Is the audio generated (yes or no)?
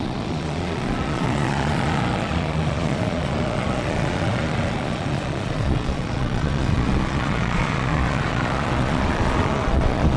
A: yes